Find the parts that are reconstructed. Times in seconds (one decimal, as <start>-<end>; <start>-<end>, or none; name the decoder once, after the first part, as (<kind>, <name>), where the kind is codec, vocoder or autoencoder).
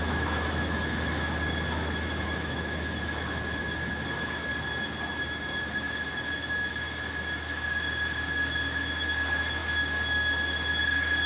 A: 0.0-4.5 (autoencoder, DAC-VAE); 5.2-11.3